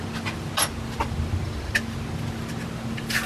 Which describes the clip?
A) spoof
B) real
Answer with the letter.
B